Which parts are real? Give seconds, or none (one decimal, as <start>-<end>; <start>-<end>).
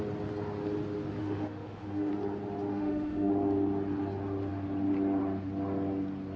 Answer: 0.0-1.2; 2.1-2.7; 3.3-6.4